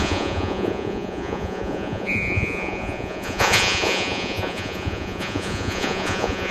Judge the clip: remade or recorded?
remade